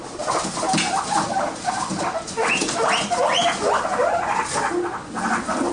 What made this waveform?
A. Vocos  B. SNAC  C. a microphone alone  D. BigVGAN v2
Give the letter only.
C